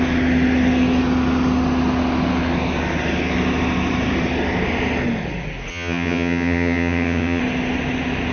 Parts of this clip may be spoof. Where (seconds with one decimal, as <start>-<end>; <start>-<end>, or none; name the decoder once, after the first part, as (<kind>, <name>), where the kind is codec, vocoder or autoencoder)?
5.7-7.4 (vocoder, HiFi-GAN)